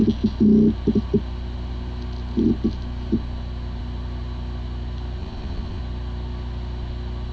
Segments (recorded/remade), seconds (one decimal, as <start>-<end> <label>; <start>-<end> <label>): 0.0-5.2 recorded; 5.2-5.8 remade; 5.8-7.3 recorded